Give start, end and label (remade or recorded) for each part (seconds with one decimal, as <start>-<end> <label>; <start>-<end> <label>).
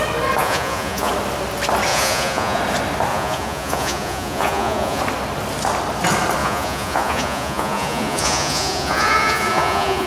0.0-0.4 recorded; 0.4-1.1 remade; 1.1-1.9 recorded; 1.9-2.6 remade; 2.6-3.1 recorded; 3.1-5.0 remade; 5.0-6.4 recorded; 6.4-10.1 remade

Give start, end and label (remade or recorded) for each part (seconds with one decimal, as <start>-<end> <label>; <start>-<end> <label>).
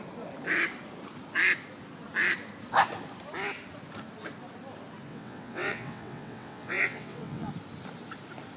0.0-5.1 recorded; 5.1-7.5 remade; 7.5-8.6 recorded